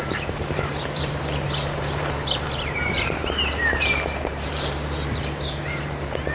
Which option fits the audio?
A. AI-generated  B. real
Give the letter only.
A